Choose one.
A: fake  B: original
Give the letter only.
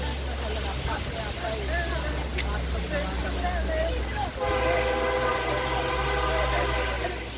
B